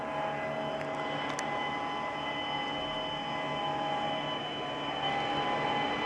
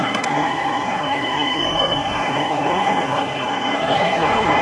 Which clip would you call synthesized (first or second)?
second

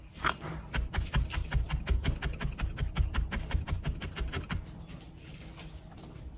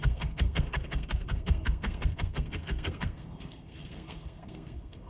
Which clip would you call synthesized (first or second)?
second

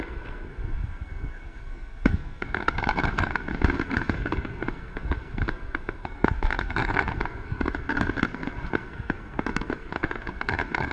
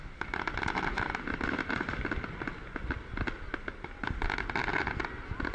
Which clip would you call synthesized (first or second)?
first